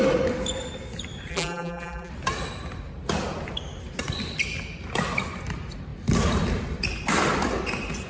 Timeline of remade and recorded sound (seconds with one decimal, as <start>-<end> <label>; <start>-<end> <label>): 0.0-1.3 recorded; 1.3-2.1 remade; 2.1-8.1 recorded